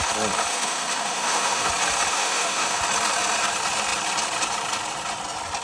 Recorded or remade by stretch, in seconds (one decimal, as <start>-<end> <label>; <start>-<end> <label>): 0.0-0.5 recorded; 0.5-1.7 remade; 1.7-2.1 recorded; 2.1-2.8 remade; 2.8-5.6 recorded